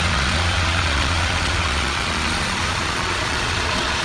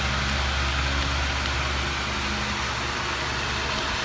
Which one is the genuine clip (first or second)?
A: second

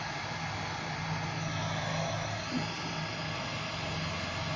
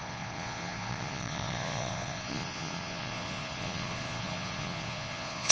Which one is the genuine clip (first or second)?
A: first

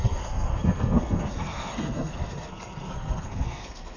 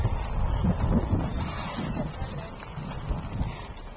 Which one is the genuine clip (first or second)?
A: second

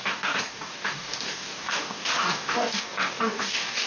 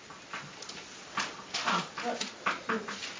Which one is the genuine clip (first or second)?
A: second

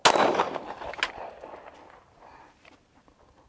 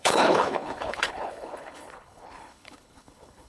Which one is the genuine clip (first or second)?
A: first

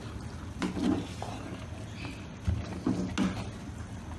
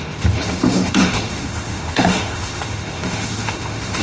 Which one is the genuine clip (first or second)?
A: first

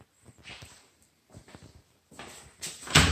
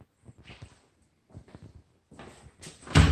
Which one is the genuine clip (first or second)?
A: second